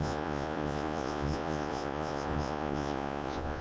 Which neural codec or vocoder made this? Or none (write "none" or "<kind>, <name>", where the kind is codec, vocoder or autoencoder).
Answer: vocoder, Vocos